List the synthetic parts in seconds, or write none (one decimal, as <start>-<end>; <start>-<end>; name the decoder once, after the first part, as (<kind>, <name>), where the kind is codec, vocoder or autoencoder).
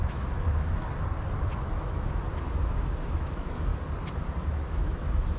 0.0-0.9 (autoencoder, DAC-VAE); 1.6-2.2; 3.0-3.7; 4.4-5.4